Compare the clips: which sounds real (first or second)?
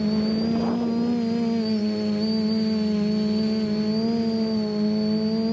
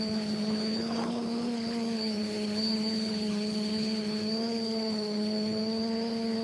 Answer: first